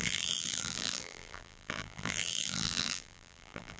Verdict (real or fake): fake